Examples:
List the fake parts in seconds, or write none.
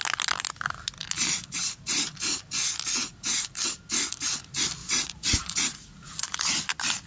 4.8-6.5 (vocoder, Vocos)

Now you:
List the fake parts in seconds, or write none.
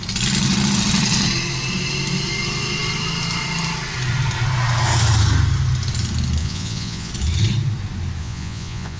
6.4-7.1 (vocoder, Vocos); 8.2-9.0